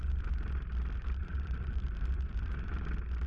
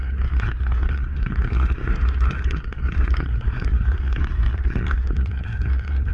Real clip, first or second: first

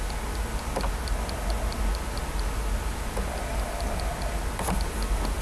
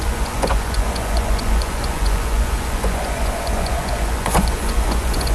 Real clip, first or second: first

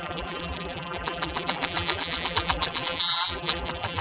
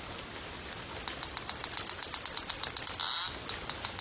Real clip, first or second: second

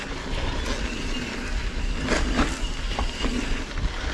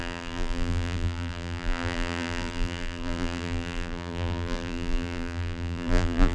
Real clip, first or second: first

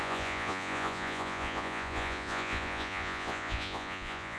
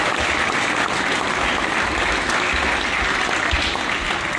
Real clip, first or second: second